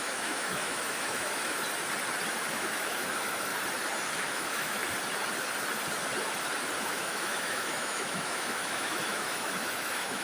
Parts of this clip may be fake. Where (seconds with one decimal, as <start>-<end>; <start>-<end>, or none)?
0.0-1.4; 2.4-3.5; 4.1-4.8; 6.8-10.2